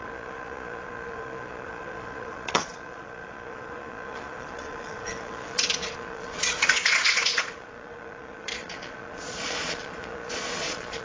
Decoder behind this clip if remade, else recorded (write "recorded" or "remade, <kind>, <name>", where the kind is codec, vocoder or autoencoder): remade, vocoder, Vocos